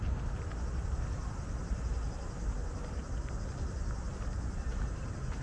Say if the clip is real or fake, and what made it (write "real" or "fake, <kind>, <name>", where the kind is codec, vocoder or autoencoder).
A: real